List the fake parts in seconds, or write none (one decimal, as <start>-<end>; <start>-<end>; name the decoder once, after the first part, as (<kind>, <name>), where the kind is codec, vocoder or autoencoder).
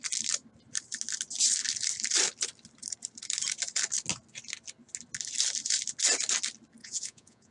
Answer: 6.8-7.5 (vocoder, Vocos)